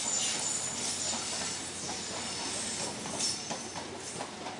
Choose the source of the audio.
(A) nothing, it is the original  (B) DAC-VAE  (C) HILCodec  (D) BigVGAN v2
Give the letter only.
A